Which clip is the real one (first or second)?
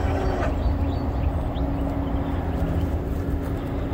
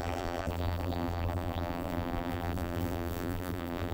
first